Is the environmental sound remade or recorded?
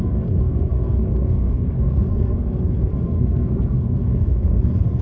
remade